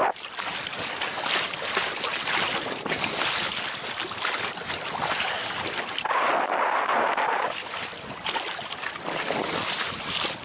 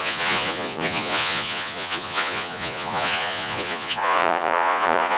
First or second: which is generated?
second